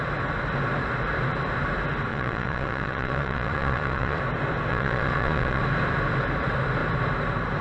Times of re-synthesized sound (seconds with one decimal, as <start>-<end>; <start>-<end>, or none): 2.1-4.2; 4.7-5.6